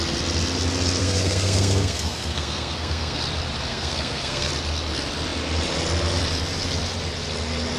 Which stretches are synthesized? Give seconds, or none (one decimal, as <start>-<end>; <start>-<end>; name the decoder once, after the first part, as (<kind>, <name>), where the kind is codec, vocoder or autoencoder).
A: 1.0-3.2 (codec, SNAC); 3.7-4.5